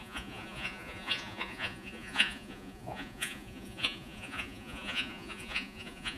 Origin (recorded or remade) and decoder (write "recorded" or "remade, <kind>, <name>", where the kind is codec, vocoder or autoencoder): remade, vocoder, Vocos